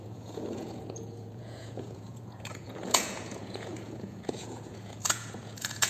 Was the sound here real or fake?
fake